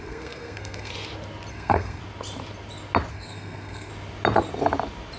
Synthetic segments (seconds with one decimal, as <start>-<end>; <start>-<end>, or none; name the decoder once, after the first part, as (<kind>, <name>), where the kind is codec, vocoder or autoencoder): 0.0-0.9 (codec, SNAC); 1.5-2.0; 3.1-3.9